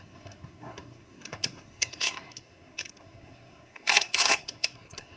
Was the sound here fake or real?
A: fake